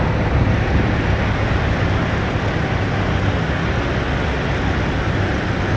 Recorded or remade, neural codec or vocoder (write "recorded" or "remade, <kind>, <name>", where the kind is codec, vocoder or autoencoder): recorded